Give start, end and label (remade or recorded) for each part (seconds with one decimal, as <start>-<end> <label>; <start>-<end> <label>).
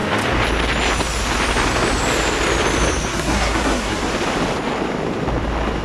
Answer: 0.0-3.1 recorded; 3.1-4.0 remade; 4.0-5.8 recorded